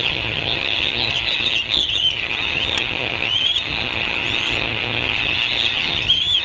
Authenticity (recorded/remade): remade